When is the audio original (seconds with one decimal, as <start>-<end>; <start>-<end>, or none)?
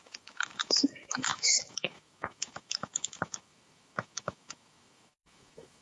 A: none